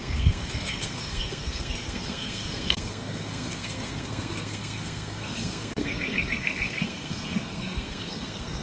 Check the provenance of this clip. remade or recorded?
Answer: remade